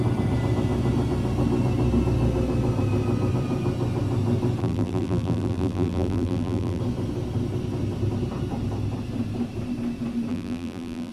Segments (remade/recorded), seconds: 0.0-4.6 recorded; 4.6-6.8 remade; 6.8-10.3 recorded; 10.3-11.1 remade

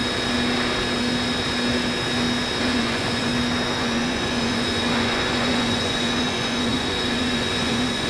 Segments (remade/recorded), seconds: 0.0-2.6 recorded; 2.6-3.3 remade; 3.3-3.8 recorded; 3.8-8.1 remade

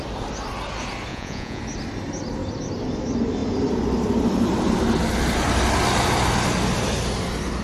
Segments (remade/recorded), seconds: 0.0-1.1 recorded; 1.1-1.6 remade; 1.6-7.6 recorded

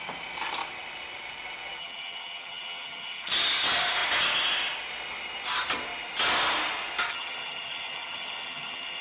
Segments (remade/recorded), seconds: 0.0-1.8 recorded; 1.8-3.3 remade; 3.3-7.1 recorded; 7.1-9.0 remade

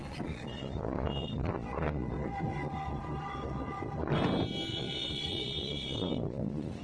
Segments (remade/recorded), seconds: 0.0-4.1 remade; 4.1-4.7 recorded; 4.7-6.8 remade